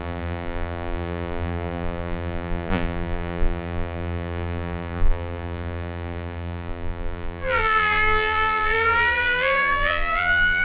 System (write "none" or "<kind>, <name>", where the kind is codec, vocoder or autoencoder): vocoder, BigVGAN v2